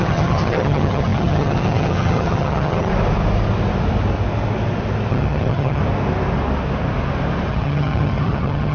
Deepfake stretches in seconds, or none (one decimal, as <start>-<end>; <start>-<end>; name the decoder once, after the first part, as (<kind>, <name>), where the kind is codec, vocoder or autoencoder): 0.0-2.9 (vocoder, HiFi-GAN); 5.1-5.8; 7.5-8.7